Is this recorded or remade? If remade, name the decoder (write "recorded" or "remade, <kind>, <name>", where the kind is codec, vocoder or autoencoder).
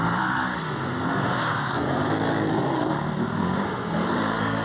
remade, codec, SNAC